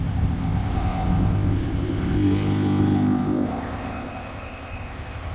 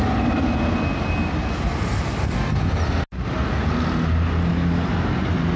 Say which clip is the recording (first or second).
second